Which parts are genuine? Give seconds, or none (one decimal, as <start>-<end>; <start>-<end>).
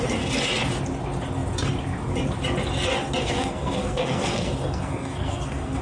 0.0-3.2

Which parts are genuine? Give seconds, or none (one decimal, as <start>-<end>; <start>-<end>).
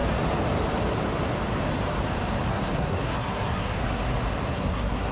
0.0-2.5; 3.8-4.5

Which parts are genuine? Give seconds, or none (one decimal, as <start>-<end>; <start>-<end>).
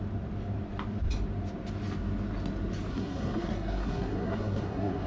0.0-2.9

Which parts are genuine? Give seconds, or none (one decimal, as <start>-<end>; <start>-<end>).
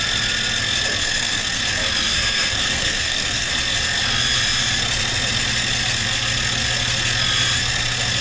0.0-1.0; 1.6-2.1; 3.5-8.2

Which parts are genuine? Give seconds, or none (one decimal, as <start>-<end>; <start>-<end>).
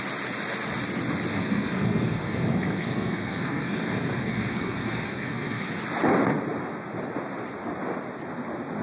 0.0-1.3; 5.7-8.8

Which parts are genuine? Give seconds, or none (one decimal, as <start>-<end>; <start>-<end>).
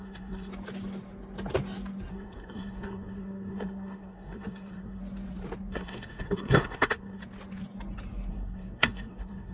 0.5-2.1; 5.0-5.7; 7.2-8.3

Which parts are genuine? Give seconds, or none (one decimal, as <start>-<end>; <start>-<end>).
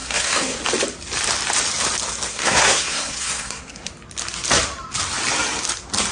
0.6-2.3; 3.9-6.1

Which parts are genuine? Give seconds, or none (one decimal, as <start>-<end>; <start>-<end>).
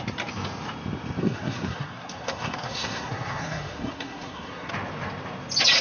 0.0-1.2; 4.7-5.8